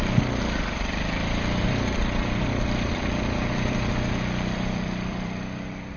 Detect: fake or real fake